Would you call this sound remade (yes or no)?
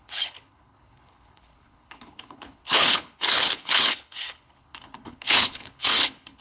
yes